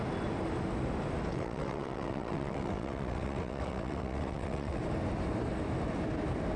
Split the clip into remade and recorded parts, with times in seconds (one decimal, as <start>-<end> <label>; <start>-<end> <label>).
0.0-1.3 recorded; 1.3-4.8 remade; 4.8-6.6 recorded